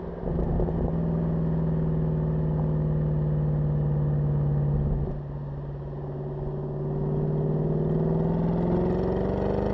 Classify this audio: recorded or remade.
recorded